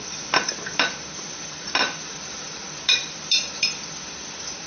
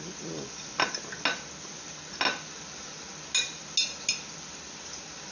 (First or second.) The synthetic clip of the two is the first